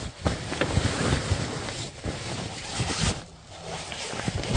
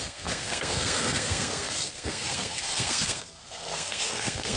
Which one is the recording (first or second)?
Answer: first